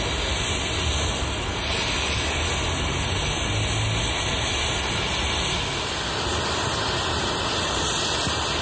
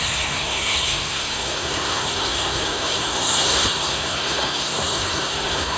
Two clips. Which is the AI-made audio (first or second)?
second